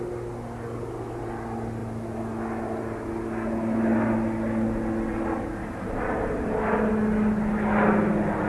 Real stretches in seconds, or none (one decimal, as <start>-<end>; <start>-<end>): 0.0-8.5